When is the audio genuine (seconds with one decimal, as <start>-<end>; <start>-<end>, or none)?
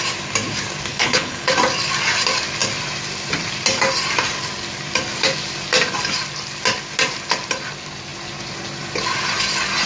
0.0-0.9; 1.5-9.9